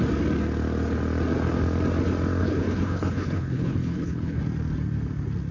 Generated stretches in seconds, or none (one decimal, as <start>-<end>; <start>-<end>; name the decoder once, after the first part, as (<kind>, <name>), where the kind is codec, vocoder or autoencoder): 2.4-4.4 (codec, HILCodec)